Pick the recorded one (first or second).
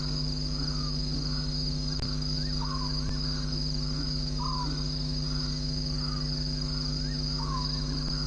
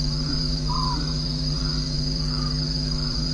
first